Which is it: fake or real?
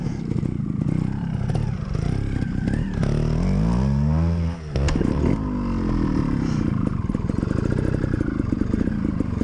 real